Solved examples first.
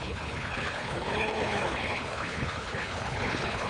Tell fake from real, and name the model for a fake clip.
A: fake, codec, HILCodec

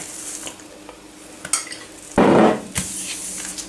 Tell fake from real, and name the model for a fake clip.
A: real